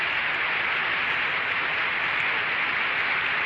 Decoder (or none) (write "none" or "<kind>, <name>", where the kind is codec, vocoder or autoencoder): none